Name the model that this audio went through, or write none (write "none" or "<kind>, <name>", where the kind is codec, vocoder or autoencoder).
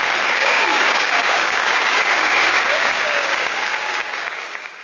codec, DAC